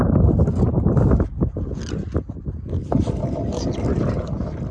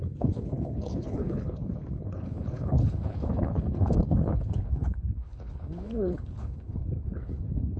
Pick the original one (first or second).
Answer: first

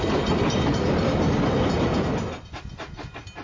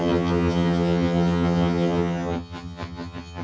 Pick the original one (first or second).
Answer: first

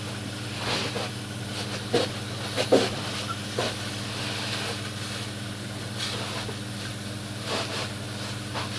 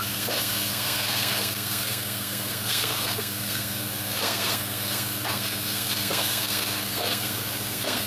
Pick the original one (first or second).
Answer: first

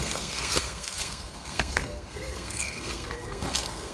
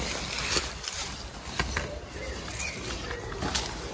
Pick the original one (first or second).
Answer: second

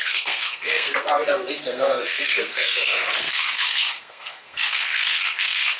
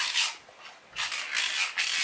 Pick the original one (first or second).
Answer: second